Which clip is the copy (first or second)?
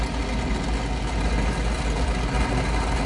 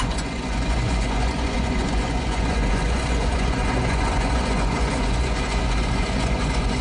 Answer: second